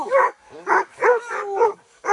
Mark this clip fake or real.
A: fake